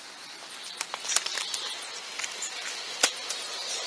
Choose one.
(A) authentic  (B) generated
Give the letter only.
A